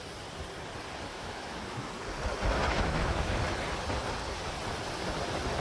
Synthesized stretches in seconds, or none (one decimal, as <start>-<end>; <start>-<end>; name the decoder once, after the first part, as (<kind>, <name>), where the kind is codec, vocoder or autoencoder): 1.1-1.9 (autoencoder, DAC-VAE); 2.6-3.3